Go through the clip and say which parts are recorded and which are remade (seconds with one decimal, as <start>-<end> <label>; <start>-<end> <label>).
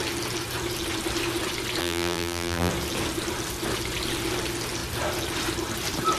0.0-1.8 recorded; 1.8-2.7 remade; 2.7-6.2 recorded